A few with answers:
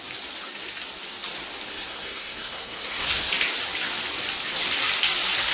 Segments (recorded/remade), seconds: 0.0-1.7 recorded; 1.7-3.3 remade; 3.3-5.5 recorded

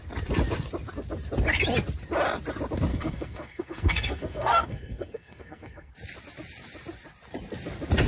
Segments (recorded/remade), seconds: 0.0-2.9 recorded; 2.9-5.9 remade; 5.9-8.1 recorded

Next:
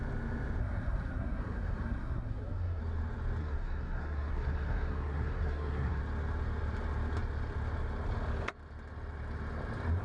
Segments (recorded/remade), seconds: 0.0-0.6 recorded; 0.6-2.8 remade; 2.8-3.4 recorded; 3.4-6.0 remade; 6.0-10.0 recorded